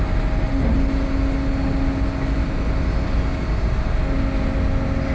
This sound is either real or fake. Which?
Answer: real